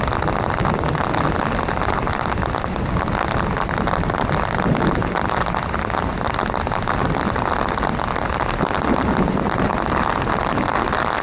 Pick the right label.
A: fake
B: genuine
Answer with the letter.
B